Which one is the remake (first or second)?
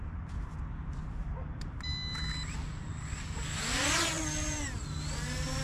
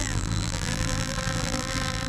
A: second